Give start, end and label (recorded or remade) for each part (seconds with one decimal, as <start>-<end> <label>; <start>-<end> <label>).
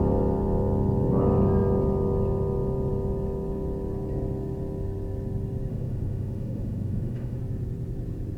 0.0-5.7 recorded; 5.7-7.4 remade; 7.4-8.4 recorded